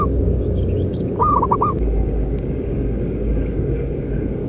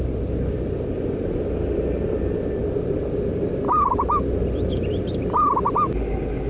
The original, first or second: second